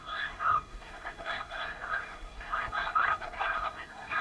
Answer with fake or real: fake